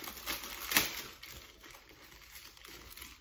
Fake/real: real